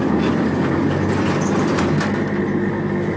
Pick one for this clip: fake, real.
real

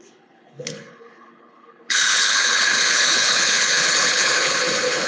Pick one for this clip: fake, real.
fake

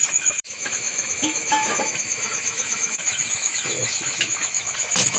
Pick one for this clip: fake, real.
fake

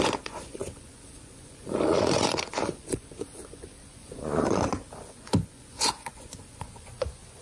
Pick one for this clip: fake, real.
fake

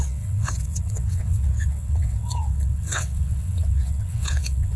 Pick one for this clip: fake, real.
fake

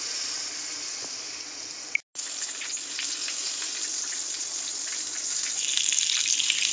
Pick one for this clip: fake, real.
real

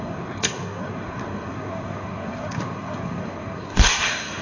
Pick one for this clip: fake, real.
fake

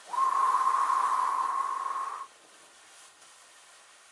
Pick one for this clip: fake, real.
fake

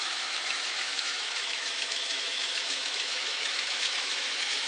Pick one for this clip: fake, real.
fake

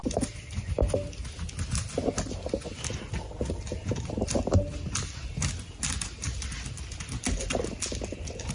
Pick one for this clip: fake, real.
real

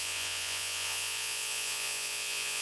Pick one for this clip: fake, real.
fake